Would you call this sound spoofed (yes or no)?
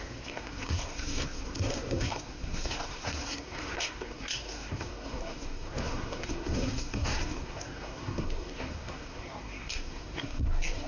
yes